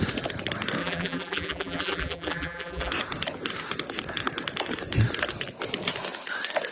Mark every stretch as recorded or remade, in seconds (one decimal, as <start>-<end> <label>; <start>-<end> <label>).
0.0-0.8 recorded; 0.8-2.9 remade; 2.9-6.7 recorded